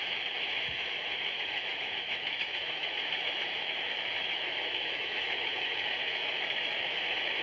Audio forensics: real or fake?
fake